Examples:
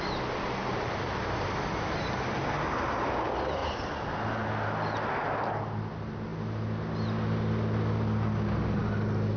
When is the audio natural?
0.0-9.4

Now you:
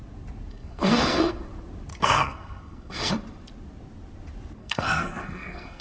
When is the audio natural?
0.0-0.5; 1.4-1.9; 3.1-4.6

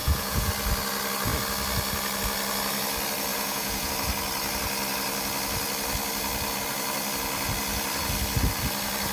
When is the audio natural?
0.5-3.3; 3.9-9.1

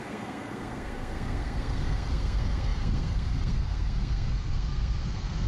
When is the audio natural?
none

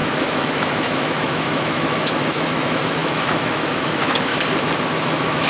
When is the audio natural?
4.3-4.8

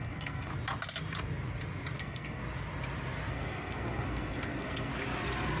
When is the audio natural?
0.5-2.0; 2.4-3.3; 4.9-5.6